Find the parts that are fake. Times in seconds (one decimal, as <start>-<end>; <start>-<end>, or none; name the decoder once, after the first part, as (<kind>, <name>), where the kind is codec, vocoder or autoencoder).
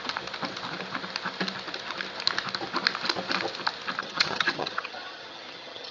4.0-5.9 (vocoder, HiFi-GAN)